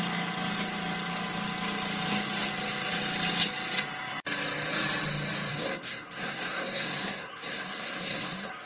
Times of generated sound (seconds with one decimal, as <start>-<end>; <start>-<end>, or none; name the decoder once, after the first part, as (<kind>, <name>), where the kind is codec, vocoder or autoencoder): 5.5-8.7 (codec, SNAC)